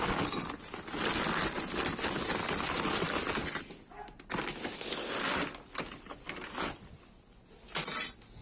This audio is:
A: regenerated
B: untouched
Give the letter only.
B